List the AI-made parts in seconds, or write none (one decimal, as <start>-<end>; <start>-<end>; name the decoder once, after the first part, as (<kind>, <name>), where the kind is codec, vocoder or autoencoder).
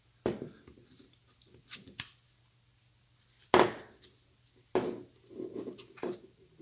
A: none